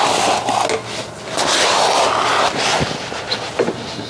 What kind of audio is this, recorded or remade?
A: recorded